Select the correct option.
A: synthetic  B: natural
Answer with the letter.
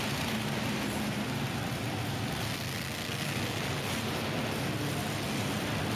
B